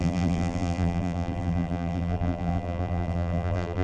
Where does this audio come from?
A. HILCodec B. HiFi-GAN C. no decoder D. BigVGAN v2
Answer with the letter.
D